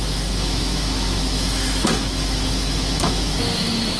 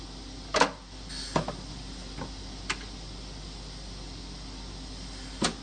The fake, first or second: first